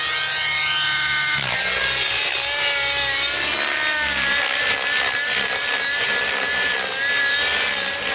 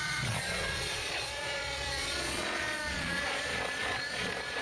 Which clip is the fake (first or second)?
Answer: second